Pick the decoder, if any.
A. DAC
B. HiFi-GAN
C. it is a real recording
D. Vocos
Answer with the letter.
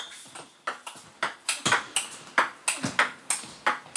C